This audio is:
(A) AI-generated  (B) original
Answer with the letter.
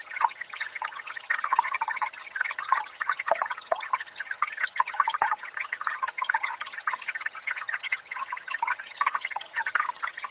A